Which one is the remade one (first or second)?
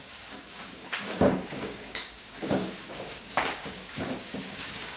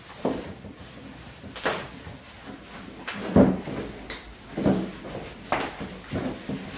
first